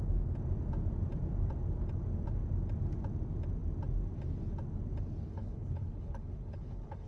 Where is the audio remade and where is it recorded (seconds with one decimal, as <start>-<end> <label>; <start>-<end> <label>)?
0.0-5.3 recorded; 5.3-7.1 remade